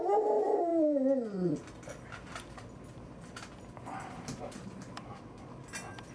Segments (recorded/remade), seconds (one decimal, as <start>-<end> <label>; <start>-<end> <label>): 0.0-6.1 recorded